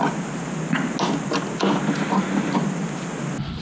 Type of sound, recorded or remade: recorded